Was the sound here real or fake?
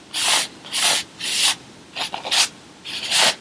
real